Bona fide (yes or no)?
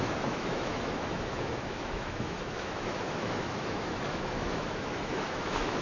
no